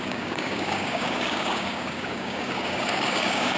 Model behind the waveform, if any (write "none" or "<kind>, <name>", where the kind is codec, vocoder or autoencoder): codec, DAC